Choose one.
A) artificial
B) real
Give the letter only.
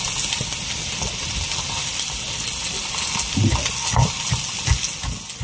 B